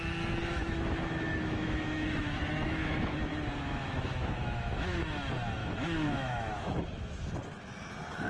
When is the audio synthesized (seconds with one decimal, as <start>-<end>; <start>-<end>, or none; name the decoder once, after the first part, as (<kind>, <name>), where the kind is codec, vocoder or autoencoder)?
0.4-5.0 (autoencoder, DAC-VAE); 5.6-7.3